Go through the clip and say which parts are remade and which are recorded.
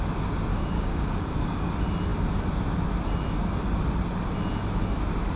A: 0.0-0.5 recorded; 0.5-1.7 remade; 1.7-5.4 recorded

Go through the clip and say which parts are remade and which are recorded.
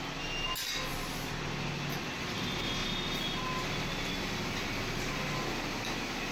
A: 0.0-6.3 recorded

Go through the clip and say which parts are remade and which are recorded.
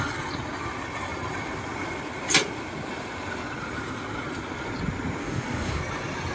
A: 0.0-5.2 recorded; 5.2-5.8 remade; 5.8-6.3 recorded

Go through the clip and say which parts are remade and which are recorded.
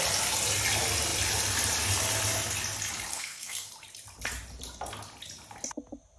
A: 0.0-3.1 recorded; 3.1-3.7 remade; 3.7-6.2 recorded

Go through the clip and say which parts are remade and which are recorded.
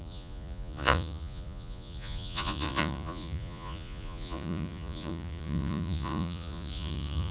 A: 0.0-7.3 remade